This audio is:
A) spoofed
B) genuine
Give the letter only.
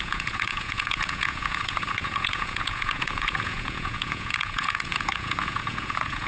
A